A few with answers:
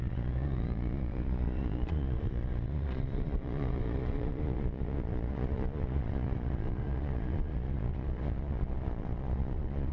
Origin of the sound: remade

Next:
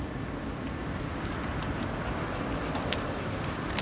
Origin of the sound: recorded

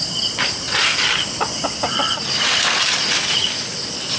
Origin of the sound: recorded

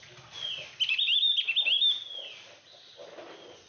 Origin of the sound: recorded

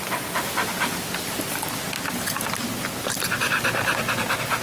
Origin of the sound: recorded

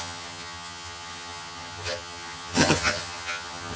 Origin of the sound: remade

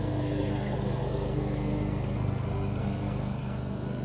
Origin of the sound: remade